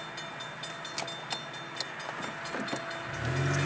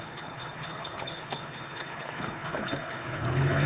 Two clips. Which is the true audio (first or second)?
first